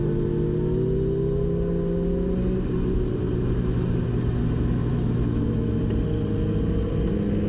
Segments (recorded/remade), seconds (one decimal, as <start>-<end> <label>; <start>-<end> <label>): 0.0-4.9 recorded; 4.9-5.8 remade; 5.8-7.5 recorded